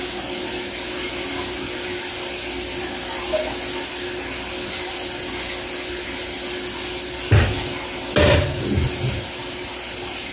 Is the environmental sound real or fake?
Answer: real